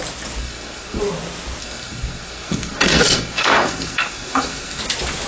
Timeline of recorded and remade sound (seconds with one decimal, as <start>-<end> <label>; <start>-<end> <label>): 0.0-0.4 recorded; 0.4-1.0 remade; 1.0-1.6 recorded; 1.6-4.8 remade; 4.8-5.3 recorded